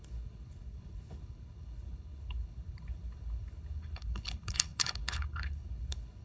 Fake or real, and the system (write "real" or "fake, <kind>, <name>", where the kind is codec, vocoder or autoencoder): fake, codec, HILCodec